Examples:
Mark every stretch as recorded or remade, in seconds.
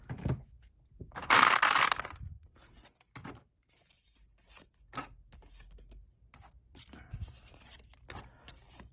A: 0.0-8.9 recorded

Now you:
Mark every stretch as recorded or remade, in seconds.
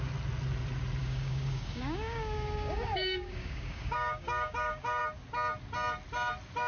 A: 0.0-1.0 recorded; 1.0-5.0 remade; 5.0-6.7 recorded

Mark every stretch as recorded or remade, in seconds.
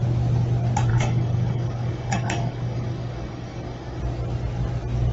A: 0.0-0.9 recorded; 0.9-4.0 remade; 4.0-5.1 recorded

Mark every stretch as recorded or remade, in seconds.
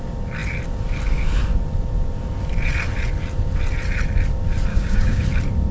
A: 0.0-4.7 recorded; 4.7-5.2 remade; 5.2-5.7 recorded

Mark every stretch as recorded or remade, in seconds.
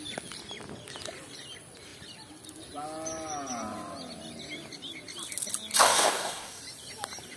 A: 0.0-5.8 recorded; 5.8-6.6 remade; 6.6-7.4 recorded